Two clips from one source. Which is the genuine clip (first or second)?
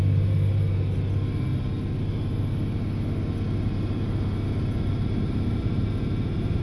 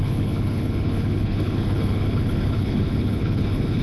first